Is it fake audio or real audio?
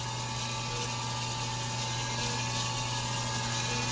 real